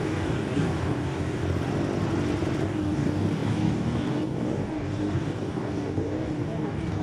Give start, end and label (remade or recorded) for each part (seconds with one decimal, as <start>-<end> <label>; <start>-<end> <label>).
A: 0.0-1.4 remade; 1.4-2.6 recorded; 2.6-7.0 remade